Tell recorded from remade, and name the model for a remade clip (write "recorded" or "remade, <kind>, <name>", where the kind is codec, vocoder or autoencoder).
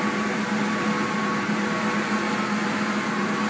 recorded